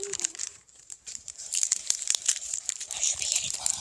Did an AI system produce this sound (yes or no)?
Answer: yes